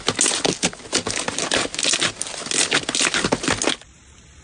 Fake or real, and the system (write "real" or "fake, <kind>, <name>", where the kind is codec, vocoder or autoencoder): real